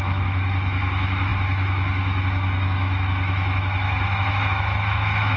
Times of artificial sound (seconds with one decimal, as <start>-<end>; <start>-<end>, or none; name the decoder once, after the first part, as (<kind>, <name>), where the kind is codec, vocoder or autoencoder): 0.0-5.4 (autoencoder, DAC-VAE)